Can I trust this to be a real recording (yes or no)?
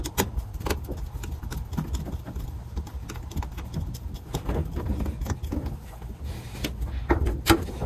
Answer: yes